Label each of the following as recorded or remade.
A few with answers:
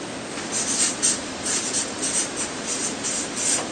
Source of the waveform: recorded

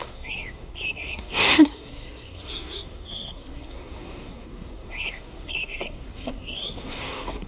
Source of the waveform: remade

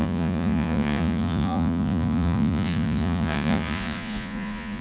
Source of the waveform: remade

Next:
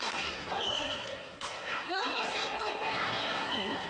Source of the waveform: remade